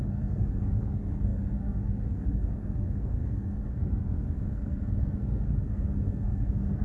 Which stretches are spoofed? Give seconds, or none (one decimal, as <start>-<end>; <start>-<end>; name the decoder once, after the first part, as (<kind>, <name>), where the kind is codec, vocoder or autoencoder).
0.0-6.8 (codec, SNAC)

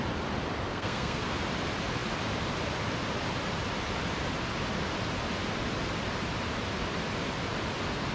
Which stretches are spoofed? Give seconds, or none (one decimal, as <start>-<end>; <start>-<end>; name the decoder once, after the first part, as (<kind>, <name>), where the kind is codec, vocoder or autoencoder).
0.7-1.3 (codec, SNAC)

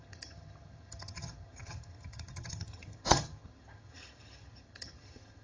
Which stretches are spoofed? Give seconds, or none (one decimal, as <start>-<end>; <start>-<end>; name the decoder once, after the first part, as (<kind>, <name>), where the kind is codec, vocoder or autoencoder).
0.0-5.4 (vocoder, HiFi-GAN)

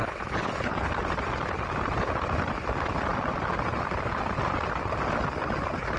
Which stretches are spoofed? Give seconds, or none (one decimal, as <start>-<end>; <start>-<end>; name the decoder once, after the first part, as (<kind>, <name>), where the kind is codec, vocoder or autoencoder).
0.0-0.9 (codec, HILCodec)

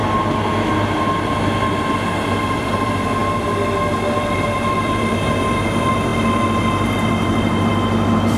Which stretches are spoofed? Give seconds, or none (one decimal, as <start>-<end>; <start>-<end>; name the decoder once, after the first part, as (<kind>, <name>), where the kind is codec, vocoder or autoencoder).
2.6-3.2 (vocoder, BigVGAN v2); 4.2-7.7